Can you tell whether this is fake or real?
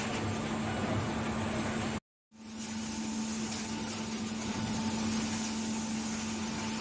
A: real